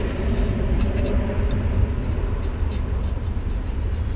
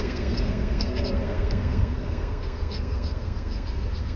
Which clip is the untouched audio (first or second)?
first